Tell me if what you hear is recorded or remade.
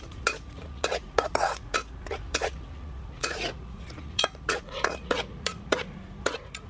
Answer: remade